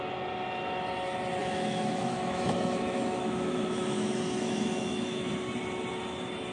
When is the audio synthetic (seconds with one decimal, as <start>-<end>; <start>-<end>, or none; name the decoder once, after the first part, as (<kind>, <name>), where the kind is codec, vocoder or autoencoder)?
1.4-5.3 (autoencoder, DAC-VAE)